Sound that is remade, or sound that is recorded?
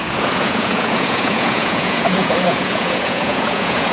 remade